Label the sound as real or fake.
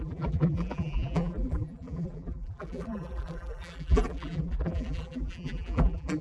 fake